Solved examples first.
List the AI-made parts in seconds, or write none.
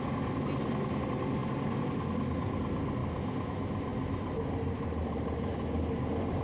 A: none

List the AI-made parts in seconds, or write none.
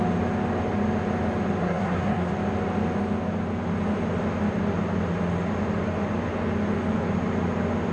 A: 1.6-2.3 (codec, SNAC)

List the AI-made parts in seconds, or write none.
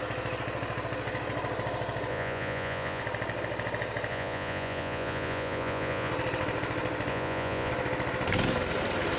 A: 2.1-3.0 (vocoder, Vocos); 4.1-6.1; 7.1-7.7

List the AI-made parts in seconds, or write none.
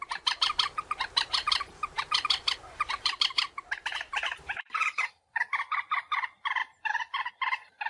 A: 1.4-5.4 (vocoder, BigVGAN v2); 6.6-7.3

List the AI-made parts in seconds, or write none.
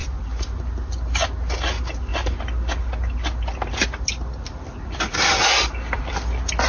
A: 0.0-0.6 (vocoder, BigVGAN v2)